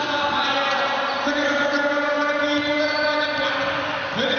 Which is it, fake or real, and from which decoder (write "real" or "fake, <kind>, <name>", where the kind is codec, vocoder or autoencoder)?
real